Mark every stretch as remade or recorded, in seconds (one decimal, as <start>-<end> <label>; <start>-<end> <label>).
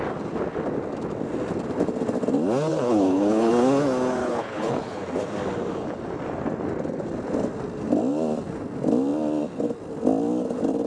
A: 0.0-2.7 recorded; 2.7-3.5 remade; 3.5-4.2 recorded; 4.2-5.0 remade; 5.0-10.9 recorded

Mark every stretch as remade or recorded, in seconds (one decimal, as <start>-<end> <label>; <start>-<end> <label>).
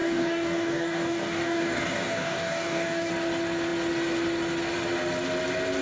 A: 0.0-3.1 remade; 3.1-5.8 recorded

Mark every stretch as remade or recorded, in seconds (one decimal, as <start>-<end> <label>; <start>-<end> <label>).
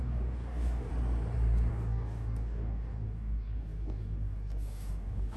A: 0.0-0.9 remade; 0.9-1.7 recorded; 1.7-5.4 remade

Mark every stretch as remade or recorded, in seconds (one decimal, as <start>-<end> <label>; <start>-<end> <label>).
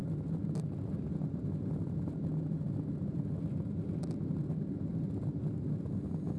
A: 0.0-4.9 recorded; 4.9-5.4 remade; 5.4-6.4 recorded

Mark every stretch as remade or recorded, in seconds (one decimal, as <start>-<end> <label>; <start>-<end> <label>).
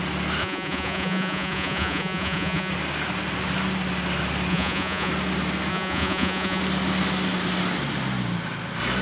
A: 0.0-0.4 recorded; 0.4-2.7 remade; 2.7-4.5 recorded; 4.5-5.1 remade; 5.1-5.7 recorded; 5.7-6.6 remade; 6.6-9.0 recorded